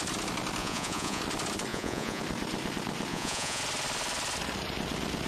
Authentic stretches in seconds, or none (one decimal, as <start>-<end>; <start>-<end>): 0.0-0.6; 1.2-1.7; 2.2-3.1; 3.6-5.3